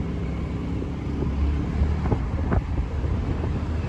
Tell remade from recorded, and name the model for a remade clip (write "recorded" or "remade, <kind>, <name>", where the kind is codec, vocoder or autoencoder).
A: recorded